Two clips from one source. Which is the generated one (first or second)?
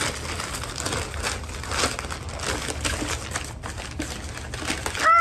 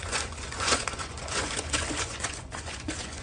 second